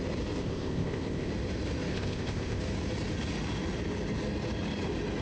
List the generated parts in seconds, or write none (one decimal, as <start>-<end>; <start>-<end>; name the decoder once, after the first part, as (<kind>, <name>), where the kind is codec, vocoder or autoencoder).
0.4-1.3 (codec, ZipCodec); 1.9-2.6